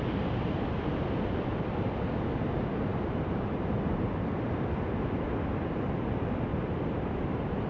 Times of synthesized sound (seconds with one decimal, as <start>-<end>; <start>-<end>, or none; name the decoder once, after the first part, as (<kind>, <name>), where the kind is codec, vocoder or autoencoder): 2.9-4.2 (vocoder, BigVGAN v2); 6.5-7.7